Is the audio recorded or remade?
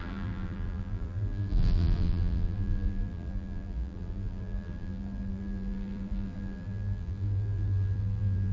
remade